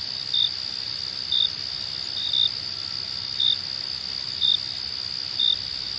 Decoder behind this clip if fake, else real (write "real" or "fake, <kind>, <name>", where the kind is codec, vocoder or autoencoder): real